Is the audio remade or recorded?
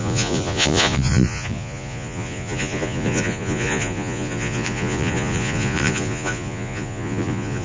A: remade